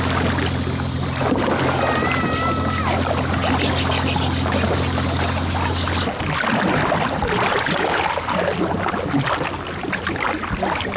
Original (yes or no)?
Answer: yes